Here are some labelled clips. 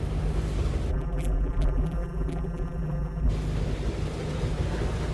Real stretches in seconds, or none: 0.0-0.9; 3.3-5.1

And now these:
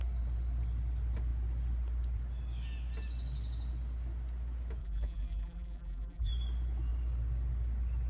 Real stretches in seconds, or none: 0.0-4.8; 6.3-8.1

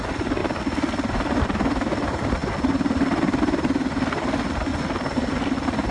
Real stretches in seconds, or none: 0.4-1.4; 4.7-5.3

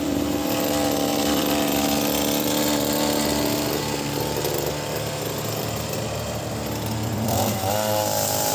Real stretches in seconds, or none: none

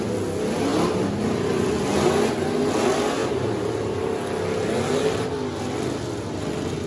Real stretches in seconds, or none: 0.0-6.9

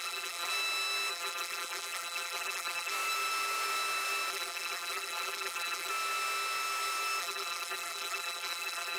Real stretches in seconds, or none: 0.5-1.1; 2.9-4.3; 5.9-7.2

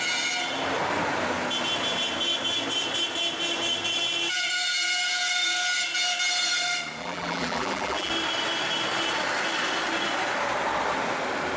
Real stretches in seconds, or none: 0.0-7.0; 8.1-11.6